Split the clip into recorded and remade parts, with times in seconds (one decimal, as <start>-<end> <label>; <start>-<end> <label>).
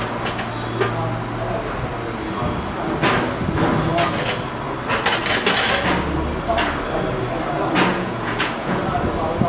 0.0-7.9 recorded; 7.9-8.8 remade; 8.8-9.5 recorded